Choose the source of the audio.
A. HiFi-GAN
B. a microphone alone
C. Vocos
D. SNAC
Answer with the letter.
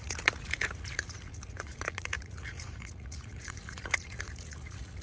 C